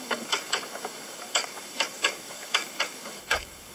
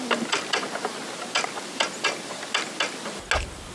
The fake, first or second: first